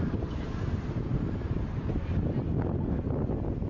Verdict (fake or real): real